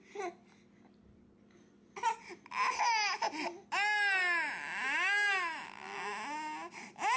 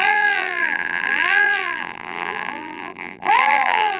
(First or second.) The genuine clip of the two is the first